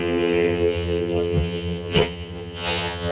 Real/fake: fake